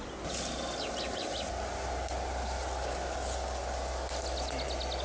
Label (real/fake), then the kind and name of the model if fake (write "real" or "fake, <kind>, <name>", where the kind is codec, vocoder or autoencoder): real